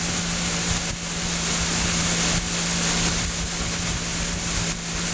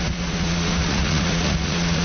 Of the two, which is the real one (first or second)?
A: first